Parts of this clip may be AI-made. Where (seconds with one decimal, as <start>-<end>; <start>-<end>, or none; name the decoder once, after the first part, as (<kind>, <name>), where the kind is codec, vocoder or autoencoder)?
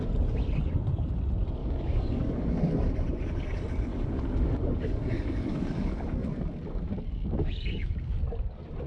1.6-2.9 (codec, DAC); 3.9-8.2